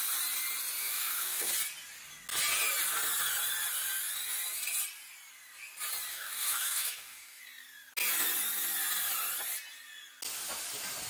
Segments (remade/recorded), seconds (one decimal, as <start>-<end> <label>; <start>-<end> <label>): 0.0-0.8 recorded; 0.8-1.5 remade; 1.5-6.1 recorded; 6.1-7.4 remade; 7.4-11.1 recorded